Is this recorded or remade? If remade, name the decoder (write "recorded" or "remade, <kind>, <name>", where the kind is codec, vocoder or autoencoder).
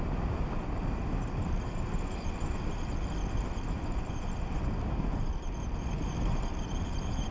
recorded